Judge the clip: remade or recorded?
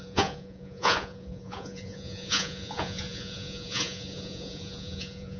remade